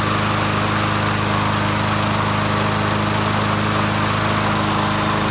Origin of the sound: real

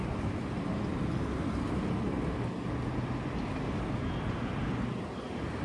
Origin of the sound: real